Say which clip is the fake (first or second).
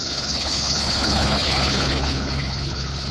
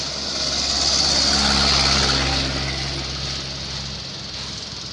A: first